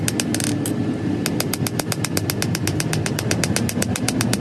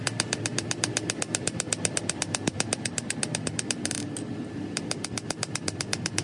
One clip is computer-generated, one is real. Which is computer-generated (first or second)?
second